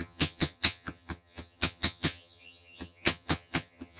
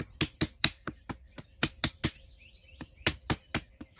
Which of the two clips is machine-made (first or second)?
first